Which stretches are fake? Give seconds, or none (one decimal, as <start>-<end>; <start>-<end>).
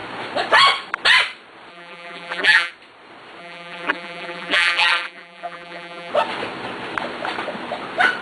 1.7-2.7; 3.4-6.1